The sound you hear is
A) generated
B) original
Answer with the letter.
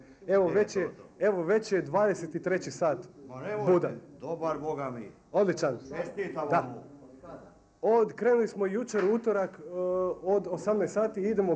B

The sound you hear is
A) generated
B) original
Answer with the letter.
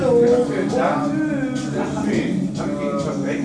B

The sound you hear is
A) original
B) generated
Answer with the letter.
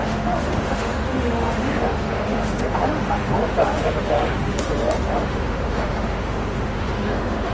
B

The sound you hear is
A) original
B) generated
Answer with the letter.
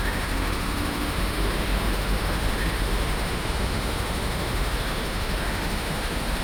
B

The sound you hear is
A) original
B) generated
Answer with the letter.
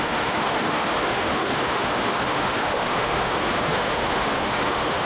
B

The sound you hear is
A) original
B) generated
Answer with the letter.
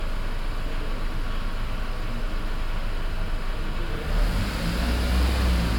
A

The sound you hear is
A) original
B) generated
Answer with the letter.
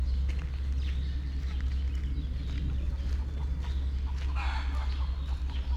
A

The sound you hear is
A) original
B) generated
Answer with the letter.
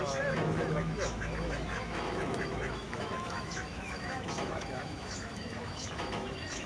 B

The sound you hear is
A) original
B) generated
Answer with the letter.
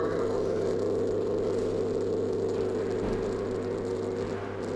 A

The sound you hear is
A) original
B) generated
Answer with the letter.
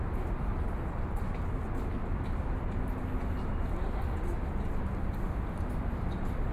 A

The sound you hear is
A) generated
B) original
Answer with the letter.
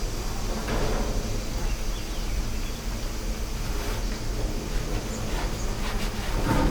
B